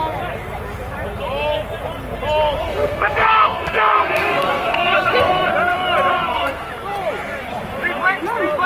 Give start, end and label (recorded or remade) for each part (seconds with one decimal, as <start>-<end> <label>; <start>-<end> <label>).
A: 0.0-2.6 recorded; 2.6-5.5 remade; 5.5-6.1 recorded; 6.1-6.7 remade; 6.7-8.7 recorded